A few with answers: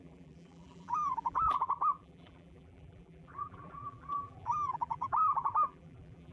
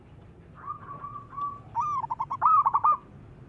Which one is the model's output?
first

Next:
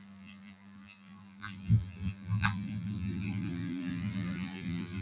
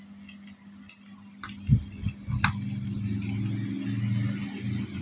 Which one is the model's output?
first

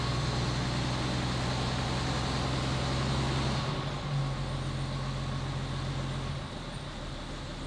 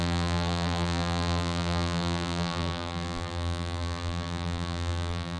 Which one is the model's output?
second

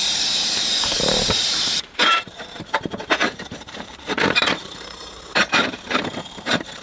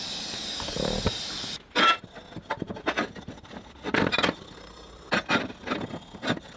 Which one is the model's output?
first